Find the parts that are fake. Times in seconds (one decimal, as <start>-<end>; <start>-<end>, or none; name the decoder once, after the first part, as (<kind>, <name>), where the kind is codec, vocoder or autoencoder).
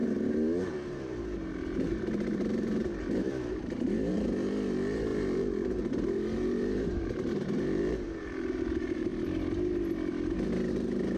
0.0-9.1 (vocoder, BigVGAN v2); 10.7-11.2